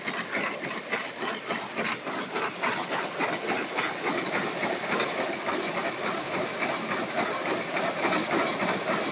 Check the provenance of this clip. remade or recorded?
recorded